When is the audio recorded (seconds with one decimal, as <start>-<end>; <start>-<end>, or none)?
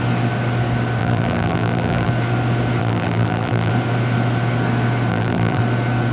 0.0-1.0; 2.1-2.8; 3.7-5.1; 5.6-6.1